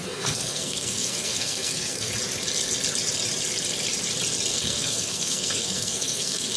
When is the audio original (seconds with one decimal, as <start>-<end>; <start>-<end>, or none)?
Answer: 2.1-4.5